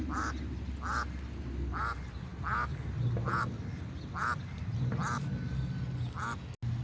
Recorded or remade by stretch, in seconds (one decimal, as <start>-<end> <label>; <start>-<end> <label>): 0.0-6.8 recorded

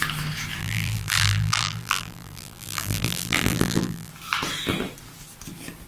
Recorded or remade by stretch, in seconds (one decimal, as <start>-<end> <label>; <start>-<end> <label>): 0.0-0.6 recorded; 0.6-4.1 remade; 4.1-5.9 recorded

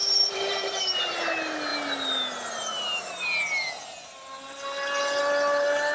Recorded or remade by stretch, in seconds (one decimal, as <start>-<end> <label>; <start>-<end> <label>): 0.0-0.8 remade; 0.8-5.9 recorded

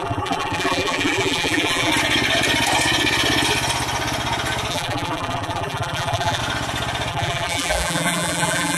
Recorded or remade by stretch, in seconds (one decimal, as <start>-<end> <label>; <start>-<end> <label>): 0.0-1.9 remade; 1.9-4.7 recorded; 4.7-6.4 remade; 6.4-7.1 recorded; 7.1-8.8 remade

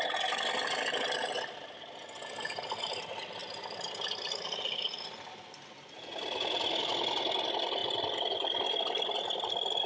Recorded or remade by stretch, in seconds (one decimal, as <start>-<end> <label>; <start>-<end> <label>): 0.0-7.8 recorded; 7.8-8.8 remade; 8.8-9.9 recorded

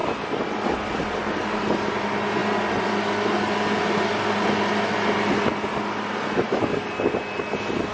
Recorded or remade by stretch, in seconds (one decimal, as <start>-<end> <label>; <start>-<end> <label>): 0.0-7.9 recorded